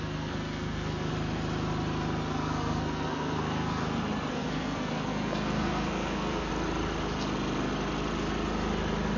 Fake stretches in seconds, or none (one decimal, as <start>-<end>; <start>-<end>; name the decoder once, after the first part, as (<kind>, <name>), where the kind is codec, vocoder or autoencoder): 0.0-1.1 (codec, SNAC); 2.3-3.8; 4.3-6.5